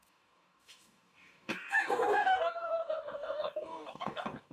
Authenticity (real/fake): fake